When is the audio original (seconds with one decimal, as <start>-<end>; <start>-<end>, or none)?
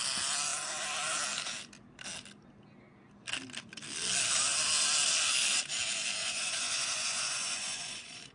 0.0-6.2